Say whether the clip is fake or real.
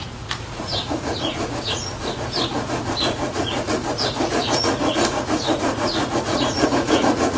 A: fake